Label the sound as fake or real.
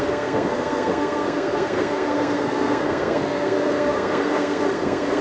fake